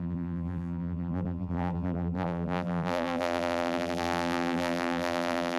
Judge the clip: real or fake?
fake